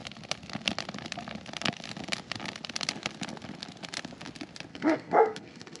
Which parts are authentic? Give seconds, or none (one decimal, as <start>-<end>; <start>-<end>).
0.0-4.7